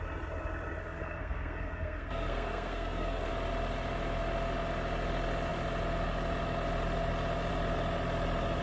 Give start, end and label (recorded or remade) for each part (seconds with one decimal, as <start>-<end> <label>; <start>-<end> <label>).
0.0-0.8 recorded; 0.8-3.3 remade; 3.3-8.6 recorded